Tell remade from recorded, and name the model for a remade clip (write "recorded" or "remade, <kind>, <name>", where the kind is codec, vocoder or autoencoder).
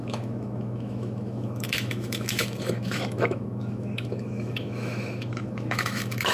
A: remade, autoencoder, DAC-VAE